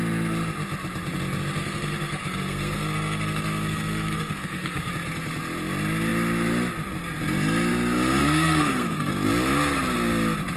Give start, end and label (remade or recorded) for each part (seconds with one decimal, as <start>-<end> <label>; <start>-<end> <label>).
0.0-1.6 recorded; 1.6-4.9 remade; 4.9-8.2 recorded; 8.2-9.1 remade; 9.1-10.6 recorded